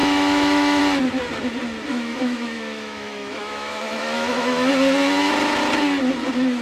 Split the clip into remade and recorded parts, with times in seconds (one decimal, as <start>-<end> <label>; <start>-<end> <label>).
0.0-0.8 remade; 0.8-1.9 recorded; 1.9-4.7 remade; 4.7-6.6 recorded